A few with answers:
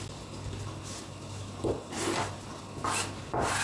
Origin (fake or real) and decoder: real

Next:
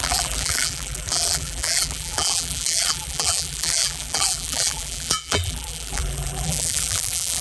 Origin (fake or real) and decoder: fake, vocoder, BigVGAN v2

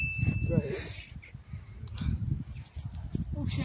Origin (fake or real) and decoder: real